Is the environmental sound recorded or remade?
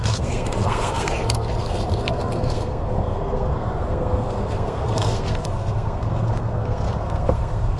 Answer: remade